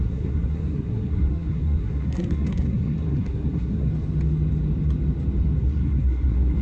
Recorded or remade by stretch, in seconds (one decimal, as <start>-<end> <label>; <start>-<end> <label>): 0.0-3.9 remade; 3.9-5.6 recorded; 5.6-6.6 remade